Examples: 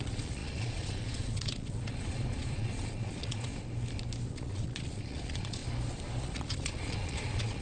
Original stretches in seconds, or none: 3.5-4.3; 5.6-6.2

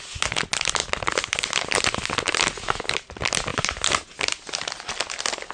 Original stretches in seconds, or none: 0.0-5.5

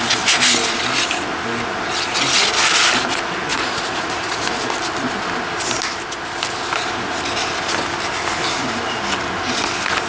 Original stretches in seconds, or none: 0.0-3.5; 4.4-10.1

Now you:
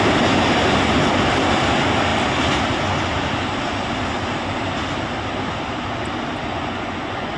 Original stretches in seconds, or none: 0.0-6.5

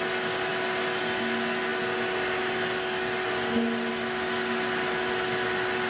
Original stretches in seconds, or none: 0.0-5.9